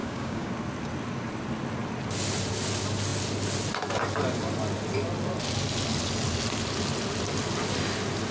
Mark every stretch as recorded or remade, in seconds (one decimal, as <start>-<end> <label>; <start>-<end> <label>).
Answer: 0.0-0.5 remade; 0.5-8.3 recorded

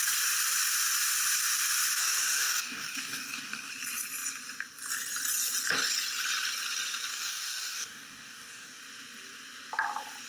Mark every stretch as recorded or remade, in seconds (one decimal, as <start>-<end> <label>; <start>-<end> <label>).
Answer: 0.0-2.0 recorded; 2.0-3.7 remade; 3.7-7.1 recorded; 7.1-8.8 remade; 8.8-10.3 recorded

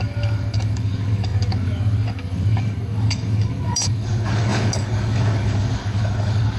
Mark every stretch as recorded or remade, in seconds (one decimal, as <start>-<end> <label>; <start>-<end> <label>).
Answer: 0.0-6.6 remade

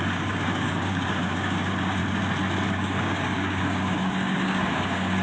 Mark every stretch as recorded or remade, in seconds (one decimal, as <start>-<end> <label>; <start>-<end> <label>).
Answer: 0.0-2.0 remade; 2.0-2.7 recorded; 2.7-5.2 remade

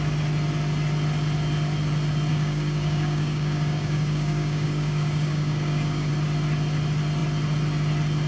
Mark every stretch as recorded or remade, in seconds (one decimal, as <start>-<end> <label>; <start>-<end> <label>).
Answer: 0.0-2.3 recorded; 2.3-6.1 remade; 6.1-8.3 recorded